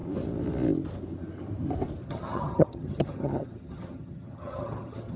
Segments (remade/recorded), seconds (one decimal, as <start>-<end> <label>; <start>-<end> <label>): 0.0-2.0 recorded; 2.0-5.2 remade

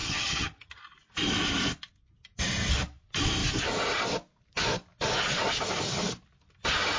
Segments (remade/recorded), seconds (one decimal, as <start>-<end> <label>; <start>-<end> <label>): 0.0-0.8 remade; 0.8-7.0 recorded

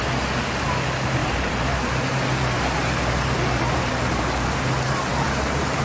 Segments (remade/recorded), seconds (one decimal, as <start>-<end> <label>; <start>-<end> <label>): 0.0-1.2 recorded; 1.2-3.9 remade; 3.9-5.1 recorded; 5.1-5.8 remade

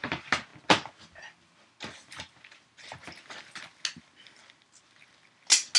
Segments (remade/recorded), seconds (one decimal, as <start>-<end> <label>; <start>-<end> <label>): 0.0-5.8 recorded